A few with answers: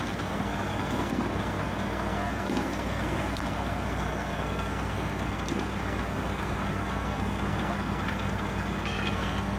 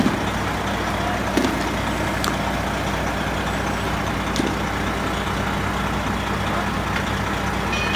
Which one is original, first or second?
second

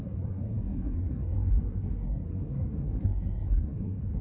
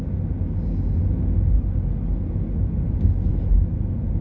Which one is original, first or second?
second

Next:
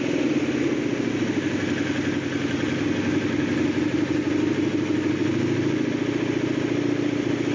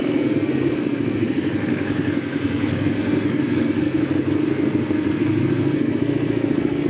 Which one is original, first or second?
first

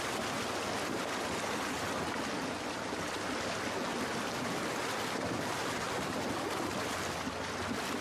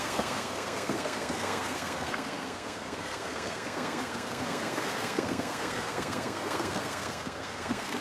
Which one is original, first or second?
first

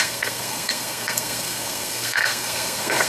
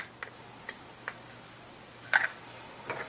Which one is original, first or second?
second